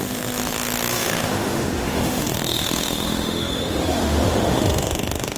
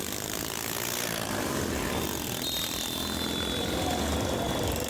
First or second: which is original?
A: second